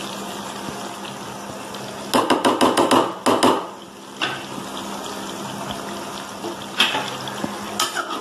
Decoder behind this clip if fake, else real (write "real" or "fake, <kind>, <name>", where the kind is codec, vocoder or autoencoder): real